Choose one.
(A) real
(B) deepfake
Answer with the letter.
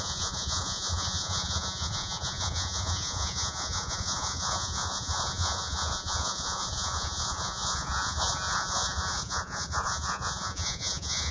B